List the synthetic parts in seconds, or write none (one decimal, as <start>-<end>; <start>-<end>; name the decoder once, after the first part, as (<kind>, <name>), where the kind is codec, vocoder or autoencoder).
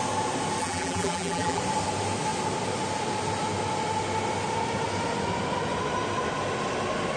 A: 0.6-1.6 (vocoder, BigVGAN v2)